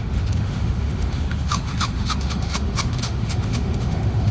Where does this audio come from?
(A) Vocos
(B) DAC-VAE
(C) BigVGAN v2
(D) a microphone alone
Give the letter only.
B